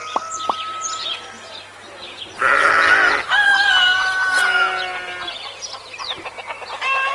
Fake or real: real